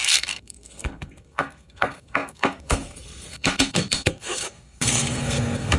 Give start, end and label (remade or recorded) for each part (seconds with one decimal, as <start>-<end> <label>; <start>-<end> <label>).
0.0-5.8 remade